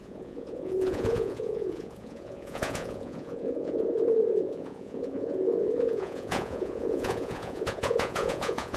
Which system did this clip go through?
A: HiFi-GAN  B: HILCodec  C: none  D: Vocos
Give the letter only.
D